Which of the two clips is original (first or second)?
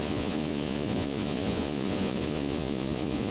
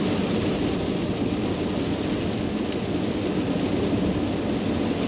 second